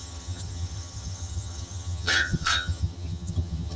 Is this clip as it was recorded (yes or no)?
no